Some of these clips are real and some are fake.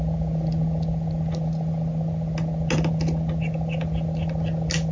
real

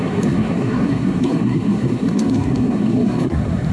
fake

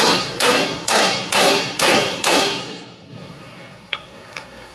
fake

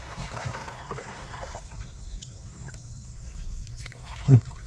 fake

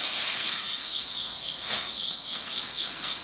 fake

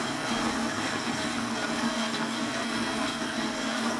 fake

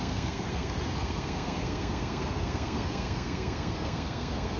fake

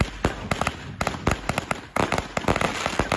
real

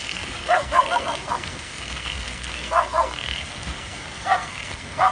fake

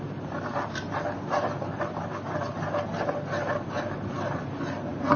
real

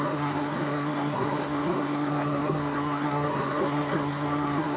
fake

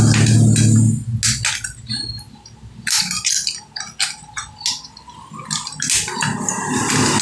real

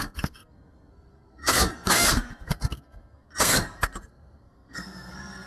fake